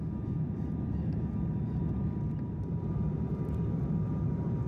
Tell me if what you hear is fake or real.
fake